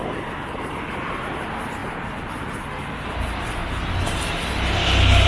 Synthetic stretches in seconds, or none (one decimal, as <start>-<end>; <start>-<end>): none